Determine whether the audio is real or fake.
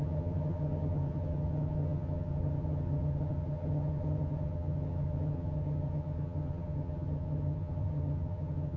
fake